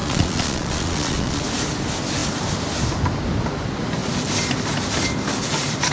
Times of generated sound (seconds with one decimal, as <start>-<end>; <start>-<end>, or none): 0.0-1.4